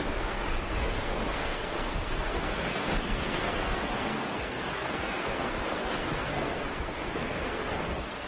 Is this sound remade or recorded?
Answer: remade